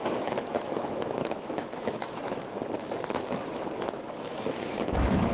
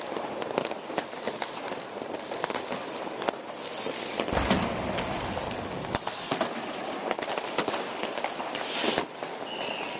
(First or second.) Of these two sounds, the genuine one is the second